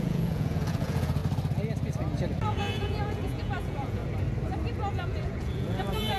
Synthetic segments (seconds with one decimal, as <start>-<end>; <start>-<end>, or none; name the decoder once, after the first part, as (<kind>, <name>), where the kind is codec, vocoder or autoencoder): 0.0-1.2 (vocoder, Vocos); 2.4-4.0; 4.9-6.2